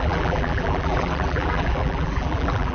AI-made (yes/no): yes